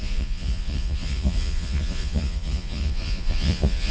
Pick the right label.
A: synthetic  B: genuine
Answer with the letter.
A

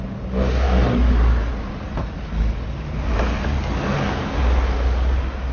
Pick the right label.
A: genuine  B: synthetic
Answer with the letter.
A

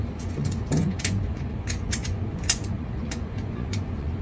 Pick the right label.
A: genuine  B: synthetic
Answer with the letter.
B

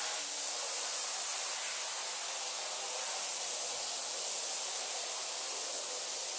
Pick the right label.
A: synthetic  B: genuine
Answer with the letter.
B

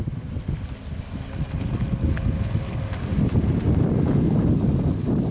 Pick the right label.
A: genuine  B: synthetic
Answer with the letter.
A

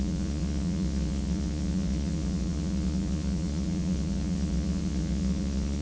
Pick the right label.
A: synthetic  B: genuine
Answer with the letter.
A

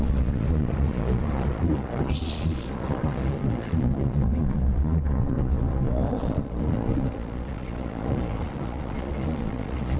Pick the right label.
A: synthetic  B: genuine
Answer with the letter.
A